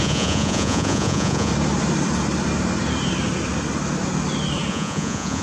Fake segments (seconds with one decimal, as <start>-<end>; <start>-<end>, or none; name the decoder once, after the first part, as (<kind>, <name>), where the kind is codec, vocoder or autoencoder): 0.0-1.5 (vocoder, Vocos); 4.7-5.4